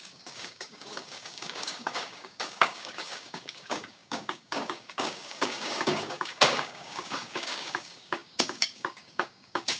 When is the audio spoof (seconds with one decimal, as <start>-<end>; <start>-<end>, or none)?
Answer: 0.0-9.8